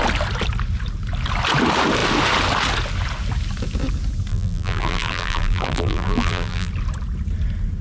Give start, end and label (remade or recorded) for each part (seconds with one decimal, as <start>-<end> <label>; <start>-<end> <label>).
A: 0.0-4.3 recorded; 4.3-6.7 remade; 6.7-7.8 recorded